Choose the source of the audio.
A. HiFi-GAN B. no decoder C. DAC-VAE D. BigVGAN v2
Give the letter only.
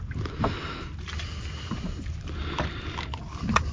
B